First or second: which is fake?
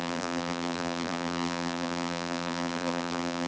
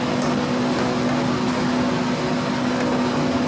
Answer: first